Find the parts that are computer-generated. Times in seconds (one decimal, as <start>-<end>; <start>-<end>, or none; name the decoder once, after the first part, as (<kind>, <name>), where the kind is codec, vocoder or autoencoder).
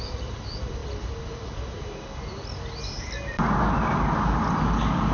none